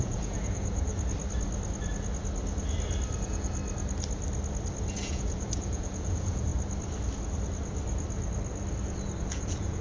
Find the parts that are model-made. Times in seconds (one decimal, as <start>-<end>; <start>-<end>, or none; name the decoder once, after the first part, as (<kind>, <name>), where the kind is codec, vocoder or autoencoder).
0.0-0.9 (vocoder, Vocos); 3.2-3.6; 5.0-6.5; 9.2-9.8

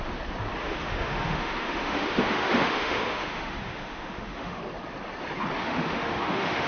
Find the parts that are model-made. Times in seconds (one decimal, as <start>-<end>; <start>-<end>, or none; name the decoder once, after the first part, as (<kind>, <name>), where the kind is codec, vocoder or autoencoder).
0.6-4.6 (autoencoder, DAC-VAE); 5.6-6.7

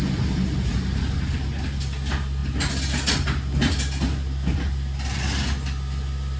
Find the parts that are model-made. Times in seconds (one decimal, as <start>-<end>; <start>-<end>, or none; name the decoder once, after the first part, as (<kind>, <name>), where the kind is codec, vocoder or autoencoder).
none

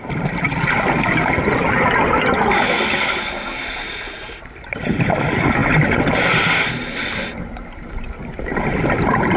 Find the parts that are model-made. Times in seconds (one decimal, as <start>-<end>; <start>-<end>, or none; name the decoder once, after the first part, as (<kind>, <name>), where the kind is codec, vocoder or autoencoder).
5.6-8.2 (vocoder, BigVGAN v2)

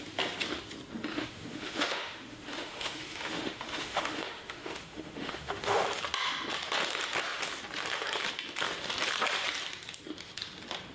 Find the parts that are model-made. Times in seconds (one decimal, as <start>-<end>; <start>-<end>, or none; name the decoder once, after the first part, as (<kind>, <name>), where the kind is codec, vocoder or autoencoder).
1.1-6.0 (autoencoder, DAC-VAE)